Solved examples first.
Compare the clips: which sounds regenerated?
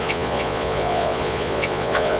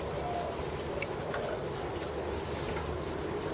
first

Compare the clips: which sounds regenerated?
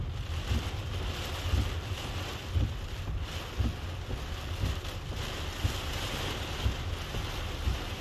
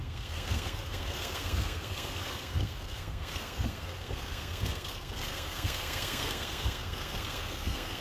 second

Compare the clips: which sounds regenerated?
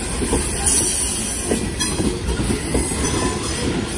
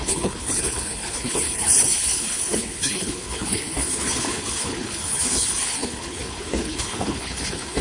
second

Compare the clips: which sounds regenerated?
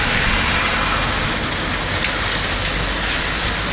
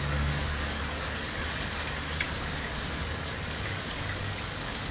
second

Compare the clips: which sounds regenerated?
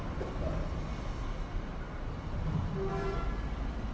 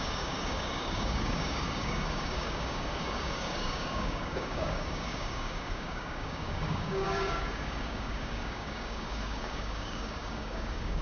second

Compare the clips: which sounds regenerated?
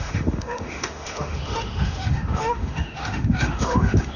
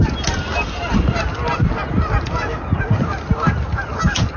first